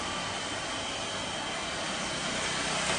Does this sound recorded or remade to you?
recorded